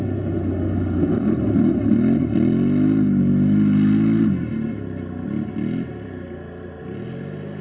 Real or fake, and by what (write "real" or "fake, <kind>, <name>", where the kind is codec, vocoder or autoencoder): real